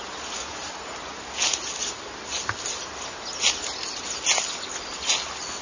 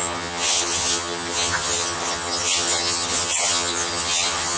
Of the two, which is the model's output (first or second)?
second